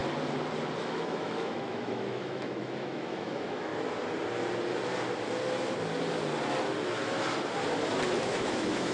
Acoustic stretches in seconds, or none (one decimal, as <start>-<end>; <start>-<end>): 0.0-0.8; 3.7-8.2